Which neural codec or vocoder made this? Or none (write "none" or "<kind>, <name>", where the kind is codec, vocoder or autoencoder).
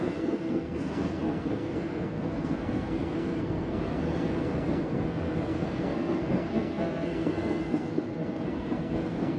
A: codec, SNAC